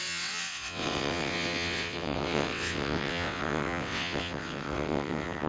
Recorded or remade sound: remade